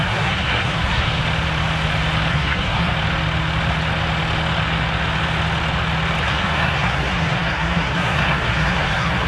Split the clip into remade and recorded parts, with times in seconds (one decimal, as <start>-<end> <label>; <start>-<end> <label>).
0.0-1.2 remade; 1.2-2.3 recorded; 2.3-2.9 remade; 2.9-6.2 recorded; 6.2-9.3 remade

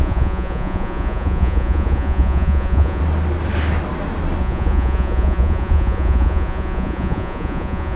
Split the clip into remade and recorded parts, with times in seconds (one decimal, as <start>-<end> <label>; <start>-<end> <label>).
0.0-3.0 remade; 3.0-4.4 recorded; 4.4-8.0 remade

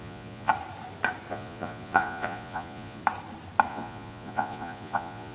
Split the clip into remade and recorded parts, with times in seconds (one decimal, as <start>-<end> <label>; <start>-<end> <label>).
0.0-0.5 remade; 0.5-1.3 recorded; 1.3-3.0 remade; 3.0-3.7 recorded; 3.7-5.3 remade

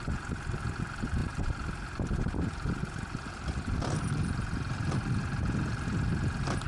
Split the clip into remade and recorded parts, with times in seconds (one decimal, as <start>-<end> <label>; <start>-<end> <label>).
0.0-6.7 recorded

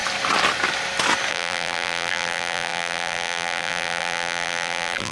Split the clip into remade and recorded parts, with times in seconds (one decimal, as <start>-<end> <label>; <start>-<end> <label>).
0.0-1.3 recorded; 1.3-5.1 remade

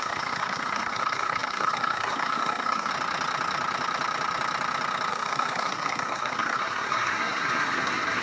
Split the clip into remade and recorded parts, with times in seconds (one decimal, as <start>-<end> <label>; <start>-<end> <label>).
0.0-2.9 remade; 2.9-5.1 recorded; 5.1-8.2 remade

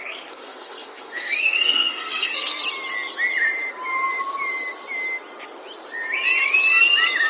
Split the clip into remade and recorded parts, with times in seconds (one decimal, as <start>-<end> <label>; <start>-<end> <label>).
0.0-2.6 remade; 2.6-7.3 recorded

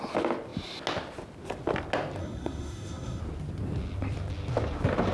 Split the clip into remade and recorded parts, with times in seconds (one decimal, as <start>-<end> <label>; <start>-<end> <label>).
0.0-2.2 recorded; 2.2-3.2 remade; 3.2-5.1 recorded